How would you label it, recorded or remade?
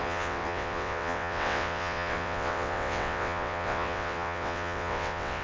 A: remade